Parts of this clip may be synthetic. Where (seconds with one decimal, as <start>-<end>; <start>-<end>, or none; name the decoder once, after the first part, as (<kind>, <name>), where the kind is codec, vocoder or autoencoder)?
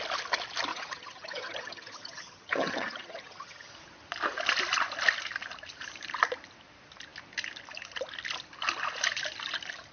0.7-3.7 (vocoder, HiFi-GAN)